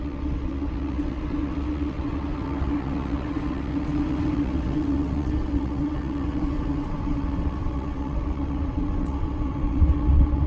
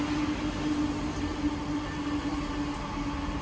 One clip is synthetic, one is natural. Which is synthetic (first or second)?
first